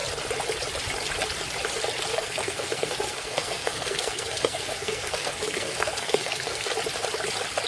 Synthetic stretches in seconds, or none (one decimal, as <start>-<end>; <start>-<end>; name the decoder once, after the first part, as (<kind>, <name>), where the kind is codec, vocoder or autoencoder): 2.1-6.7 (codec, SNAC)